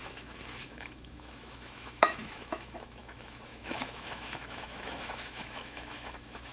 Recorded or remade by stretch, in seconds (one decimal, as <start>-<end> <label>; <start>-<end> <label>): 0.0-6.5 remade